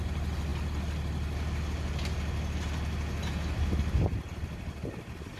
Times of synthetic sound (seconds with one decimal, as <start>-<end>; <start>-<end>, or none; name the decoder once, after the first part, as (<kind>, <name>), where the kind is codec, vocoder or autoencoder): none